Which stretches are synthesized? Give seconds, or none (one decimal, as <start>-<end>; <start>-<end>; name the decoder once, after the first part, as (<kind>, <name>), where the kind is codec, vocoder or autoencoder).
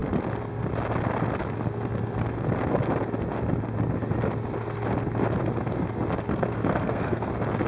6.3-7.3 (codec, SNAC)